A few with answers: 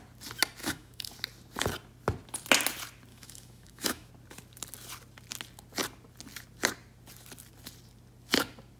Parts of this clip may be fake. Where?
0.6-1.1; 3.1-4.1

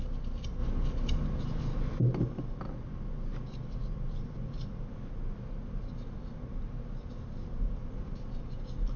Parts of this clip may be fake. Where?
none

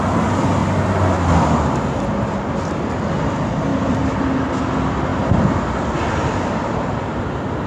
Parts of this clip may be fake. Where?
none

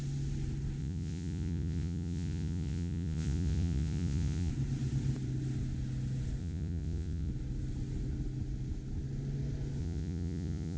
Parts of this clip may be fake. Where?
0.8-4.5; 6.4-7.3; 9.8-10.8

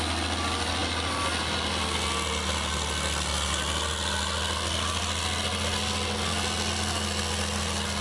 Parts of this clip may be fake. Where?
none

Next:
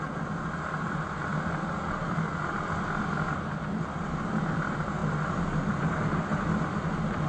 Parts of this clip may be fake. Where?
none